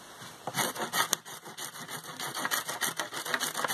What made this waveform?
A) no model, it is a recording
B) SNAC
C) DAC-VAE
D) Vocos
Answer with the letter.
A